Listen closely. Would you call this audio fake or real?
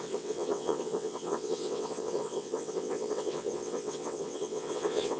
fake